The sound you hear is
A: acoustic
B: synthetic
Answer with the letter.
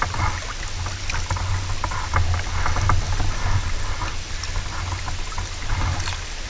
A